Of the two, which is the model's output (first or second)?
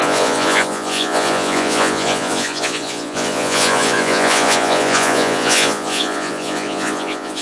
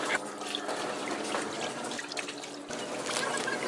first